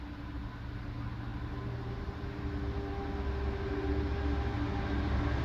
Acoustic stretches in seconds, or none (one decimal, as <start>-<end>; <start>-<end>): 0.0-5.4